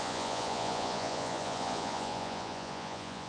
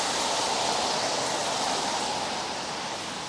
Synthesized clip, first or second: first